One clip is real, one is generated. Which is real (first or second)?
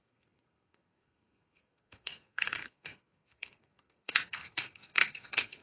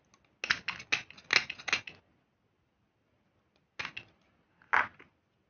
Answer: second